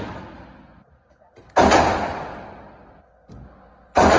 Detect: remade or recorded recorded